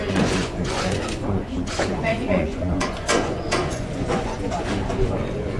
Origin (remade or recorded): remade